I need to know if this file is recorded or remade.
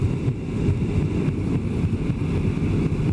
recorded